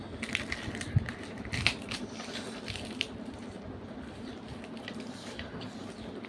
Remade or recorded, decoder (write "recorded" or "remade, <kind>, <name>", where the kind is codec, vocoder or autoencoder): recorded